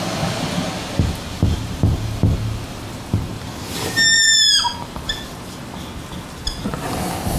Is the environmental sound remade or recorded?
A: recorded